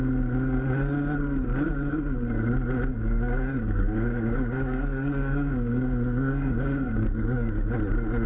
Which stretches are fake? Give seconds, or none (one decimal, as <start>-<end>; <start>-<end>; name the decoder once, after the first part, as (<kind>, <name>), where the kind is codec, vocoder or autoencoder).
2.9-7.7 (codec, DAC)